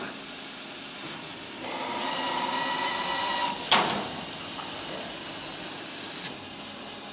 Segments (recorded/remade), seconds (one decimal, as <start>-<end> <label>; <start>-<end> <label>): 0.0-7.1 recorded